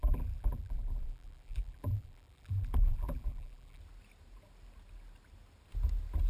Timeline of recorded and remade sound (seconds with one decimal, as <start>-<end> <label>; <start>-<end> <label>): 0.0-3.8 remade; 3.8-6.3 recorded

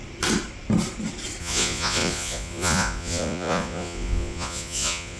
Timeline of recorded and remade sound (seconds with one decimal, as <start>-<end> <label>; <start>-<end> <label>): 0.0-1.4 recorded; 1.4-5.2 remade

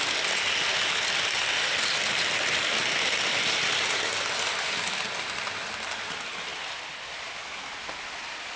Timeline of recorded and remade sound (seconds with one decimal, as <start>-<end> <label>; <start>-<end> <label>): 0.0-8.6 recorded

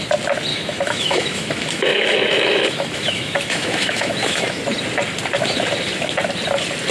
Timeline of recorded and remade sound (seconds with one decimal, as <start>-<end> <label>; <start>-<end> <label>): 0.0-0.5 recorded; 0.5-4.6 remade; 4.6-6.9 recorded

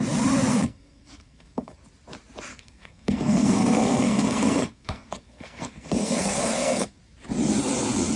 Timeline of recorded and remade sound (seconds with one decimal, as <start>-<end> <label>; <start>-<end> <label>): 0.0-0.5 recorded; 0.5-1.8 remade; 1.8-2.5 recorded; 2.5-7.0 remade; 7.0-8.2 recorded

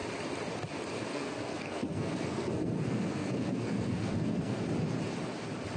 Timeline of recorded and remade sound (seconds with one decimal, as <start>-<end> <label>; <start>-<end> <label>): 0.0-1.1 recorded; 1.1-4.6 remade; 4.6-5.8 recorded